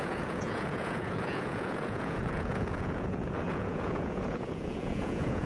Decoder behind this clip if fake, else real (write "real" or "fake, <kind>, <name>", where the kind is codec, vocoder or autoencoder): fake, vocoder, Vocos